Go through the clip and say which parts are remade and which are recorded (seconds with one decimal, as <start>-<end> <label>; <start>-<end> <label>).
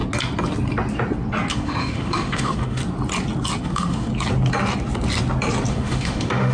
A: 0.0-1.5 recorded; 1.5-2.8 remade; 2.8-3.6 recorded; 3.6-4.1 remade; 4.1-5.7 recorded; 5.7-6.5 remade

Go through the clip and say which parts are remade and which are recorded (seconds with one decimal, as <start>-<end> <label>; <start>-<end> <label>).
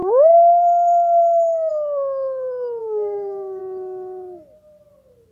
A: 0.0-1.7 remade; 1.7-2.8 recorded; 2.8-3.6 remade; 3.6-5.3 recorded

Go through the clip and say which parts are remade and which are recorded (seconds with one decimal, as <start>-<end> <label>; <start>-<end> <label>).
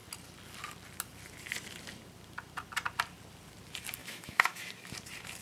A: 0.0-4.0 recorded; 4.0-4.7 remade; 4.7-5.4 recorded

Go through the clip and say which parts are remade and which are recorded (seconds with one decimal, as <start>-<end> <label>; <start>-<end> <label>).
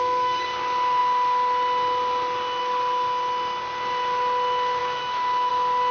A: 0.0-4.8 recorded; 4.8-5.5 remade; 5.5-5.9 recorded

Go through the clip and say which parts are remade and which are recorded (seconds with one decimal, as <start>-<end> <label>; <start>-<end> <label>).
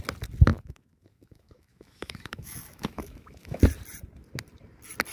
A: 0.0-0.5 recorded; 0.5-3.6 remade; 3.6-5.1 recorded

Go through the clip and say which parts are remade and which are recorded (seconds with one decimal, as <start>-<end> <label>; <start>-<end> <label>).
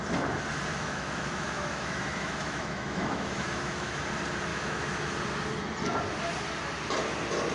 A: 0.0-0.7 recorded; 0.7-4.0 remade; 4.0-4.5 recorded; 4.5-5.1 remade; 5.1-7.5 recorded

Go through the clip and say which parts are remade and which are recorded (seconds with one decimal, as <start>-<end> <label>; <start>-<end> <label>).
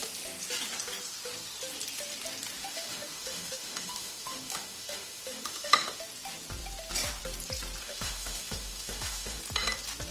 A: 0.0-2.6 recorded; 2.6-6.0 remade; 6.0-7.8 recorded; 7.8-9.4 remade; 9.4-10.1 recorded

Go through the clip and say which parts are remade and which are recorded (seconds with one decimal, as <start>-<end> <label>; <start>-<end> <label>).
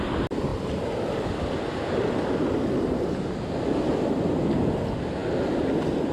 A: 0.0-6.1 recorded